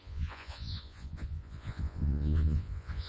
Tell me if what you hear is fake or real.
fake